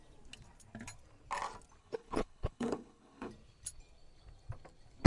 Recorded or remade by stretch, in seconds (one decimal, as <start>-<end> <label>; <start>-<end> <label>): 0.0-1.8 recorded; 1.8-3.3 remade; 3.3-5.1 recorded